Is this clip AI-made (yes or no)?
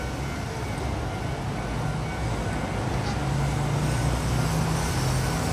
no